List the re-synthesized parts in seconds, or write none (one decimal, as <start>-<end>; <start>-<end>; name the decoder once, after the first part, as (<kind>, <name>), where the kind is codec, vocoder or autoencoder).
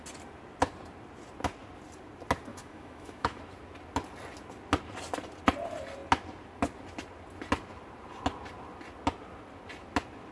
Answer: 2.5-3.4 (autoencoder, DAC-VAE)